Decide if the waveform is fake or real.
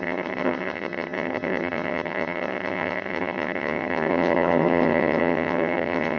fake